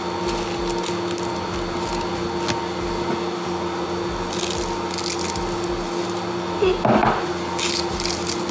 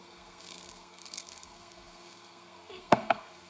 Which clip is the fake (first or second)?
second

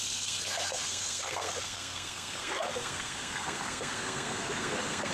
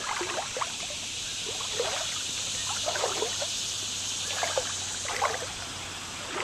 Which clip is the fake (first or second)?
first